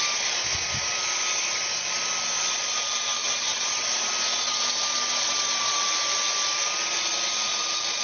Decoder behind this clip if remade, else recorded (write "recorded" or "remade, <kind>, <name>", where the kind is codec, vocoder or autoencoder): recorded